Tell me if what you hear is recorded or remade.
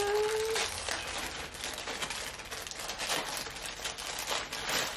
recorded